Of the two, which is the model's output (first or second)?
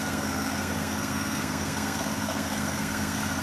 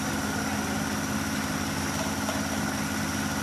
first